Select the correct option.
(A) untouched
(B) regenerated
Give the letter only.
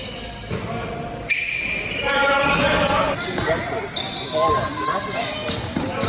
A